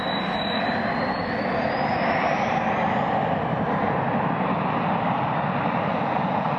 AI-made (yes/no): no